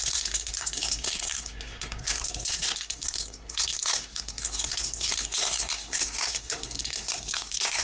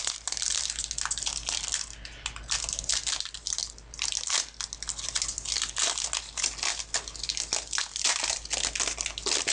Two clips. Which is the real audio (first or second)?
second